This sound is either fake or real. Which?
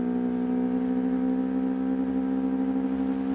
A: real